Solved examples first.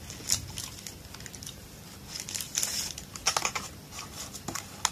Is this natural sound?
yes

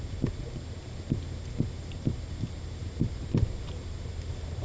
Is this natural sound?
yes